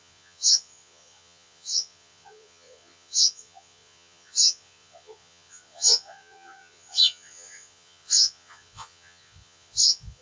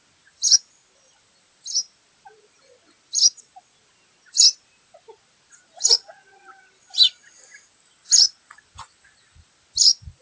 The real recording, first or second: second